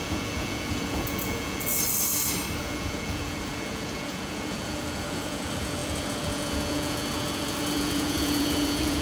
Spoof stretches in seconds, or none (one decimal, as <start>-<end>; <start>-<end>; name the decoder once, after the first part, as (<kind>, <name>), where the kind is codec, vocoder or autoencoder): 0.0-1.7 (vocoder, Vocos); 2.6-9.0